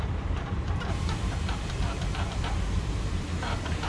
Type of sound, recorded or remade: remade